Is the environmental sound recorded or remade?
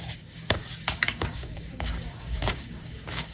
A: remade